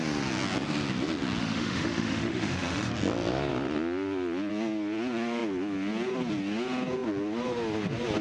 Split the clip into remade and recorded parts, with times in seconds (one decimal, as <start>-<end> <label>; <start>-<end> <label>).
0.0-1.4 recorded; 1.4-2.9 remade; 2.9-8.2 recorded